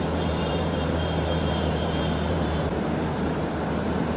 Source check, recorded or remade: remade